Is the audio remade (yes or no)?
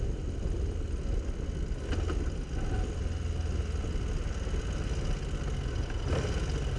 no